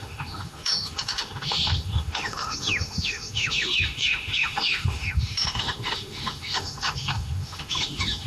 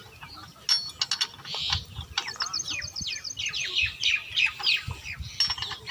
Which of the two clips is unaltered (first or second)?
second